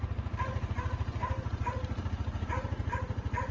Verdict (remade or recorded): remade